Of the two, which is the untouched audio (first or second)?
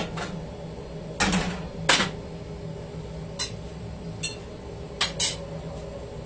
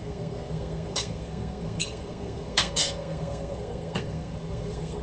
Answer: first